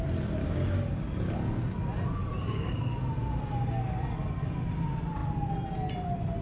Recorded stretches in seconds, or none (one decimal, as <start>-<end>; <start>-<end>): 0.0-0.4; 1.3-2.3; 2.8-6.4